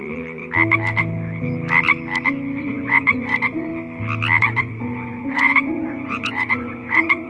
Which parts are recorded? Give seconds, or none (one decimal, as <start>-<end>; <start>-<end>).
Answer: 0.4-2.6; 3.7-4.4